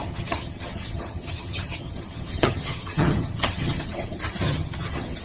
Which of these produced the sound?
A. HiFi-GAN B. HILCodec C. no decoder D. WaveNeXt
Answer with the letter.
A